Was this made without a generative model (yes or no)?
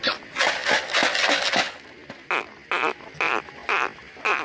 yes